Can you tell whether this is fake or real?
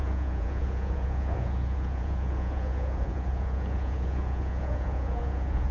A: fake